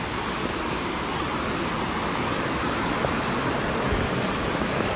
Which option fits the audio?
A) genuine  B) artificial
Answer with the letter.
A